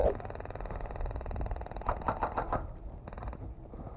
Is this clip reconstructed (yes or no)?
no